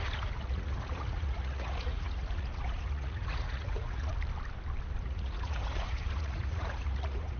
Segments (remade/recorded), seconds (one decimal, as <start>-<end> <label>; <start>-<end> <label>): 0.0-4.1 remade; 4.1-5.0 recorded; 5.0-7.4 remade